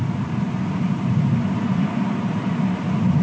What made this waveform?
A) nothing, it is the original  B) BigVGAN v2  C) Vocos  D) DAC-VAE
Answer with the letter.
A